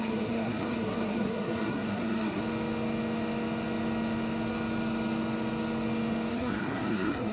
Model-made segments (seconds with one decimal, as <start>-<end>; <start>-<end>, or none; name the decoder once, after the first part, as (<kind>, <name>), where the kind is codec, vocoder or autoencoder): 0.0-2.4 (codec, SNAC); 6.3-7.3

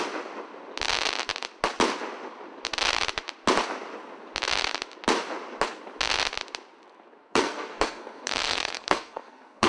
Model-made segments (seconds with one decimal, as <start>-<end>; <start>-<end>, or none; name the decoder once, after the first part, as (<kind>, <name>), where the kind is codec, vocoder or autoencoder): 7.2-9.7 (codec, SNAC)

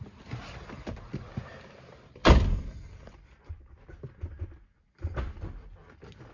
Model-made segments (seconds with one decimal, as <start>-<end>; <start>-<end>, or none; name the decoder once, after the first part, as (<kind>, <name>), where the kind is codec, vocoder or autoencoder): none

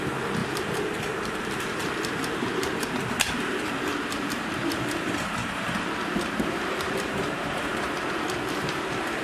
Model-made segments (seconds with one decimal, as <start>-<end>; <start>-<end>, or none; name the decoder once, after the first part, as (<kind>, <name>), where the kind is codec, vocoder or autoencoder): 0.0-9.2 (vocoder, BigVGAN v2)

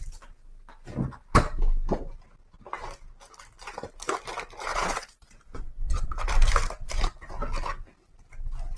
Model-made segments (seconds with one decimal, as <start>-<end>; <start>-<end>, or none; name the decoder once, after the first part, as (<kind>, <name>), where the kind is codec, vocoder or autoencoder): 4.7-6.2 (vocoder, Vocos)

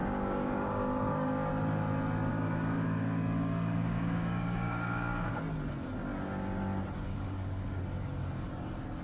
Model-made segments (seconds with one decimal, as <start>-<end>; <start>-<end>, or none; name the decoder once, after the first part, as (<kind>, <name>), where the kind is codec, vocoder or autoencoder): 0.0-1.5 (codec, DAC); 2.3-5.3; 7.1-7.8

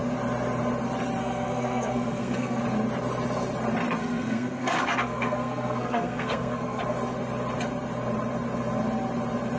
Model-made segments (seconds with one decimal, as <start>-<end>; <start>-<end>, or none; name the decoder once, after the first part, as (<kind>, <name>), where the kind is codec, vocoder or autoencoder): 1.2-2.6 (codec, SNAC); 4.0-6.8